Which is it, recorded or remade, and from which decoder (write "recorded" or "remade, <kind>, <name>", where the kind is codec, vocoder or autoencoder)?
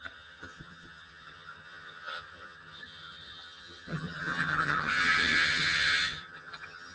remade, vocoder, HiFi-GAN